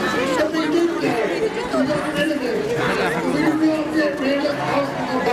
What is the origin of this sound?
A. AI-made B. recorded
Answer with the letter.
B